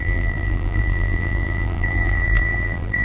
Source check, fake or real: fake